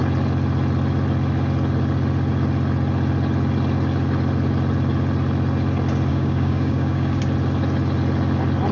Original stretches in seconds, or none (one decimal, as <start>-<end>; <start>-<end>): 0.0-6.1; 7.2-8.7